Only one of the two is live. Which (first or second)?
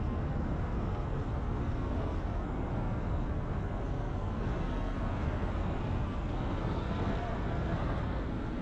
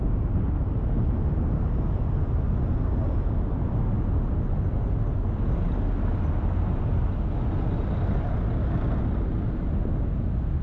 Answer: second